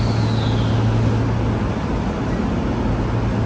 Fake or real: real